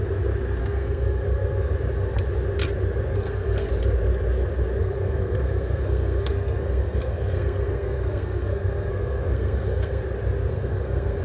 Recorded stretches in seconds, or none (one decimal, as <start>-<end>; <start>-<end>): 0.0-0.6; 1.7-3.1; 3.7-4.8; 10.0-10.5